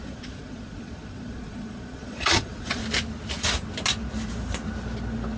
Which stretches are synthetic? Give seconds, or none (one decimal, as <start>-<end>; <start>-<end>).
0.0-2.8